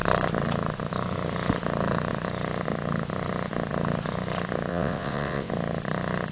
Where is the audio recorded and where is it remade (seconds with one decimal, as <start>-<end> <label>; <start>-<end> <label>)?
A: 0.0-4.7 recorded; 4.7-5.5 remade; 5.5-6.3 recorded